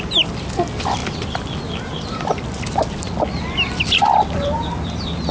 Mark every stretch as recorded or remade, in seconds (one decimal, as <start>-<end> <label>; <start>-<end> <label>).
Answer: 0.0-5.3 recorded